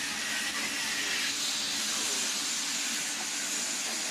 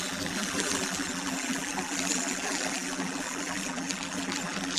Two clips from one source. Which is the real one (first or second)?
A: first